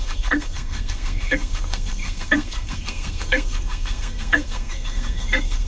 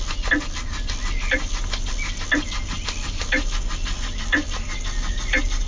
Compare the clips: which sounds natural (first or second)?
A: second